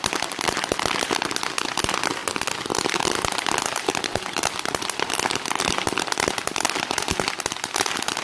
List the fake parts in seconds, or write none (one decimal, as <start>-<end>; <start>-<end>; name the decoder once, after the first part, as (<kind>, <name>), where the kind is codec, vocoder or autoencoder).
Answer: none